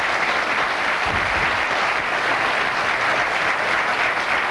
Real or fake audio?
real